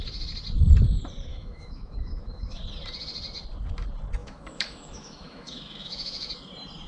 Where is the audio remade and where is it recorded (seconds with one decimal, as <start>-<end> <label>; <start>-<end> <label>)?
0.0-1.3 recorded; 1.3-2.6 remade; 2.6-4.2 recorded; 4.2-6.3 remade; 6.3-6.9 recorded